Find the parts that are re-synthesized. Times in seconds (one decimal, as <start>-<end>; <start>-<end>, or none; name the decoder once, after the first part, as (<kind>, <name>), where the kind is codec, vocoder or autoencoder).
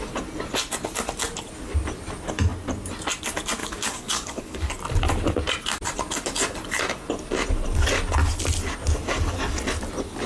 3.6-4.7 (codec, DAC)